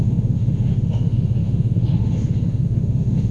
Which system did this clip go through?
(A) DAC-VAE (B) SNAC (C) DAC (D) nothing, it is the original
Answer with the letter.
A